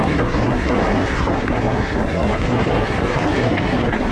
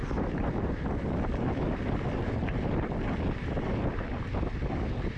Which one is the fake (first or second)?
first